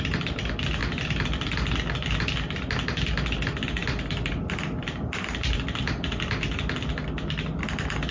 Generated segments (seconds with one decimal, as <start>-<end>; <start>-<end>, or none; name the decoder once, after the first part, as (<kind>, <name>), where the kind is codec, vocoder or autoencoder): none